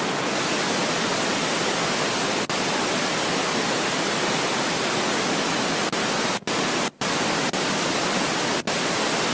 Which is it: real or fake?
real